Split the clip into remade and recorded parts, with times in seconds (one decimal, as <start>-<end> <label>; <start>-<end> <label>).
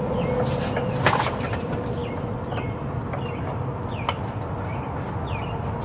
0.0-5.8 recorded